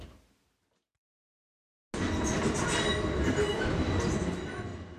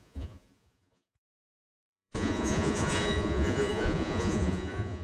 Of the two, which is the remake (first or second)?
second